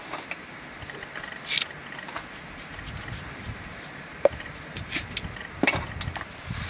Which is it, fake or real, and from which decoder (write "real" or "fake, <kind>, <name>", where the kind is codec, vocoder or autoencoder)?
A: real